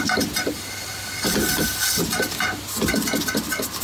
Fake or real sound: real